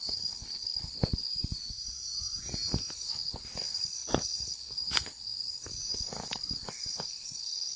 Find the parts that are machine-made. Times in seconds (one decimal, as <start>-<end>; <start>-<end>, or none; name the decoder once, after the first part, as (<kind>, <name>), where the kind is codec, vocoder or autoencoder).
0.0-1.3 (codec, HILCodec); 2.9-7.8